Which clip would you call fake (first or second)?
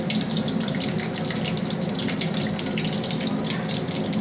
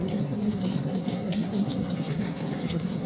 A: second